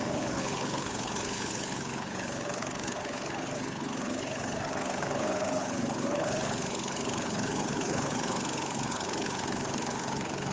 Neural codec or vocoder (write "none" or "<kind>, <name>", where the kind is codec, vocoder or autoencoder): codec, HILCodec